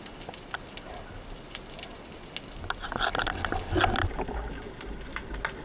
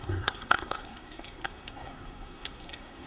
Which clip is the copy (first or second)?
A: second